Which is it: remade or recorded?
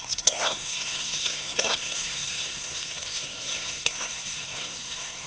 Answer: remade